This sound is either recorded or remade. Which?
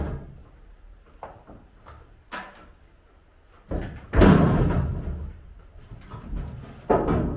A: recorded